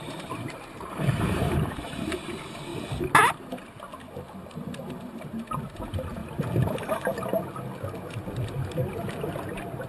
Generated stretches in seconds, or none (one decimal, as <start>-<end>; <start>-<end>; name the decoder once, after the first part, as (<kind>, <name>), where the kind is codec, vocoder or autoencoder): 0.0-2.7 (vocoder, BigVGAN v2); 4.9-6.2; 9.4-9.9